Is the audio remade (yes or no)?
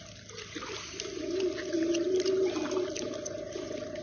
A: no